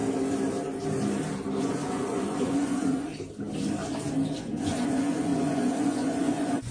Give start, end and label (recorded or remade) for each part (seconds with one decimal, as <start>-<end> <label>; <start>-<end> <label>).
0.0-1.6 recorded; 1.6-3.1 remade; 3.1-4.4 recorded; 4.4-6.7 remade